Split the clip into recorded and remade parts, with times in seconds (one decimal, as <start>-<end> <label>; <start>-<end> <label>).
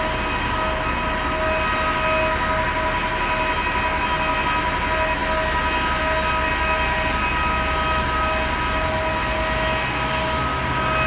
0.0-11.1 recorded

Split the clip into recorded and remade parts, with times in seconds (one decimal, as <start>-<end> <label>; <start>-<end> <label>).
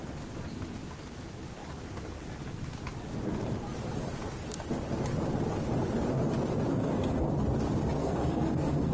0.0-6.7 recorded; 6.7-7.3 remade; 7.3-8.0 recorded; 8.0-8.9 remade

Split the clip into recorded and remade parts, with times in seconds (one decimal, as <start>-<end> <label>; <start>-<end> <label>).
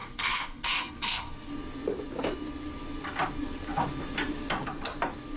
0.0-1.5 remade; 1.5-5.4 recorded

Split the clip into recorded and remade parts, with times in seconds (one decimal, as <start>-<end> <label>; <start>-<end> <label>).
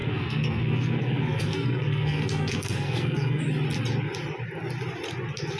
0.0-3.4 remade; 3.4-5.6 recorded